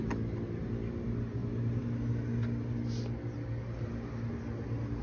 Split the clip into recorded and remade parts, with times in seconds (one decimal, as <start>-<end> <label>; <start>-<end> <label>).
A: 0.0-5.0 recorded